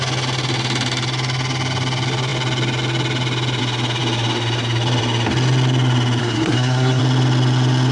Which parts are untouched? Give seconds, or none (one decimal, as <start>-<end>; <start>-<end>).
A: 0.0-6.2; 7.0-7.9